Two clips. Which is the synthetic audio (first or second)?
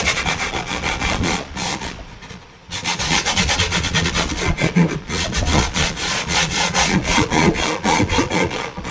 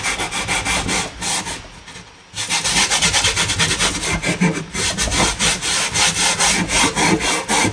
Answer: first